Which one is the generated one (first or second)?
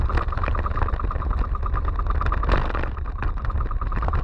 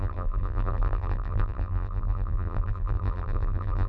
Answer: second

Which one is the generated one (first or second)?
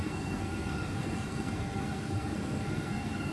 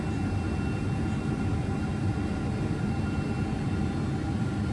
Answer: first